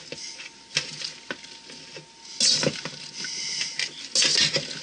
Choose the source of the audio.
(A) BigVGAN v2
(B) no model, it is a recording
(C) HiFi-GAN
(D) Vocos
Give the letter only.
B